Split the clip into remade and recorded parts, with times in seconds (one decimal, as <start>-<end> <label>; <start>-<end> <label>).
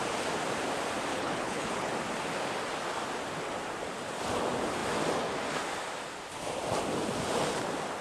0.0-1.1 recorded; 1.1-1.9 remade; 1.9-8.0 recorded